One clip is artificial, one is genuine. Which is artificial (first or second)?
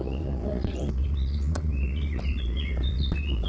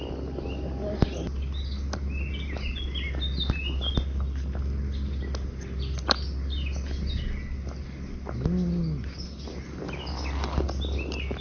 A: first